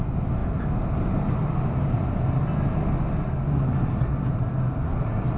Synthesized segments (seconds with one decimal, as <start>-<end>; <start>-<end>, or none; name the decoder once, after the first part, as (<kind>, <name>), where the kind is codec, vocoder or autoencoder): none